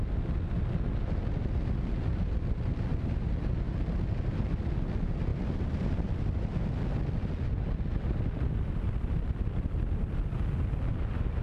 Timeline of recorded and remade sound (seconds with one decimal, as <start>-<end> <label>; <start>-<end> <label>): 0.0-2.1 recorded; 2.1-3.3 remade; 3.3-5.3 recorded; 5.3-10.1 remade; 10.1-11.4 recorded